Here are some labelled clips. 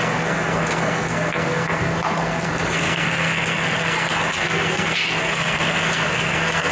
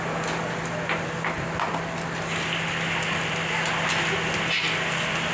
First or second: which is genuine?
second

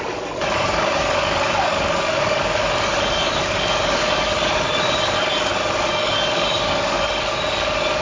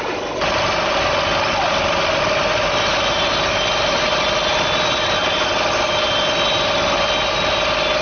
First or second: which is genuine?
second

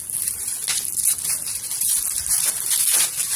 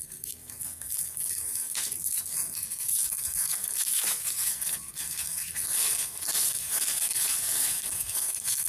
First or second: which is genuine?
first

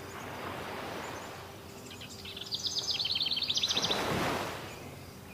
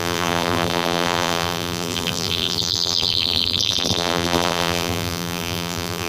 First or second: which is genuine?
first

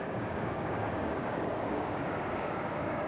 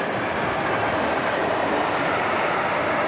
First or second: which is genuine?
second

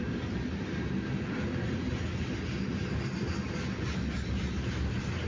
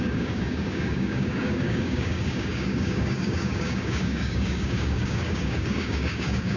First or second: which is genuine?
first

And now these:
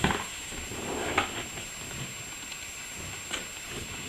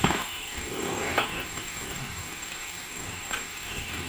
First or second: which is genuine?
first